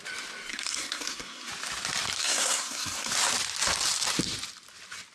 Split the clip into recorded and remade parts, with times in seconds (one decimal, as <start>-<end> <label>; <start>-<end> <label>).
0.0-0.5 recorded; 0.5-1.5 remade; 1.5-2.2 recorded; 2.2-3.1 remade; 3.1-5.1 recorded